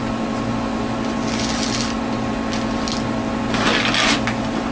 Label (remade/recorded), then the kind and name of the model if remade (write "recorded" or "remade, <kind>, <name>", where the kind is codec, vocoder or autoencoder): recorded